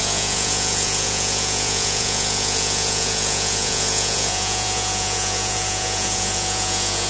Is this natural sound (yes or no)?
no